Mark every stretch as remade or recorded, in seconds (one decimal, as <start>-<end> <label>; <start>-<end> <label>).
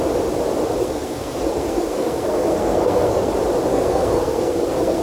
0.0-0.8 recorded; 0.8-3.3 remade; 3.3-3.7 recorded; 3.7-5.0 remade